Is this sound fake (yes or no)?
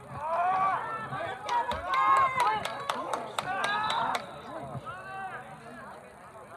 no